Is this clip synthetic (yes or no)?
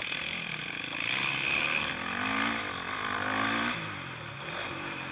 no